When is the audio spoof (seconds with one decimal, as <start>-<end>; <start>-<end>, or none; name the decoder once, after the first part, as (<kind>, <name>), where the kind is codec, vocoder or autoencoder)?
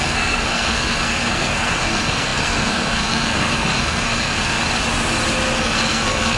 0.0-4.6 (codec, SNAC); 5.6-6.4